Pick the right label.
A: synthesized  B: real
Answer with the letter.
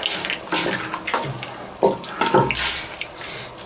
B